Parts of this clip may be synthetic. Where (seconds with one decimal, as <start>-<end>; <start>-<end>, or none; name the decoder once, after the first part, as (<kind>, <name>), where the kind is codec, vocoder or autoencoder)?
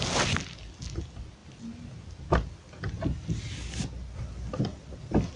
none